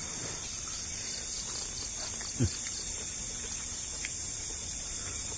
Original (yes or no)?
yes